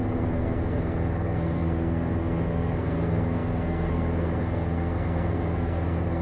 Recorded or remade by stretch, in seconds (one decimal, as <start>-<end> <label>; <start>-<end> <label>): 0.0-6.2 remade